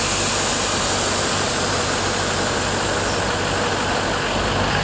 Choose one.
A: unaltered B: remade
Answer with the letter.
A